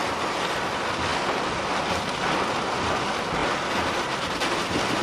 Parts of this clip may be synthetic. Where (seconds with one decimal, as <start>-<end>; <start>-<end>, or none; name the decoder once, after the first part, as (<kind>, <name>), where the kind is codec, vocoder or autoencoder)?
none